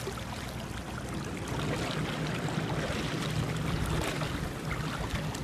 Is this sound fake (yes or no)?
no